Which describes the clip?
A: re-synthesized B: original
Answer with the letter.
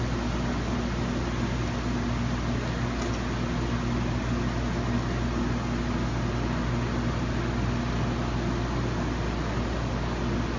B